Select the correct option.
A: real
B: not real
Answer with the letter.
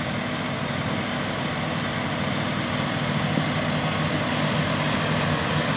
A